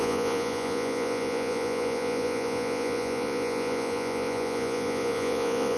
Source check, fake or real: fake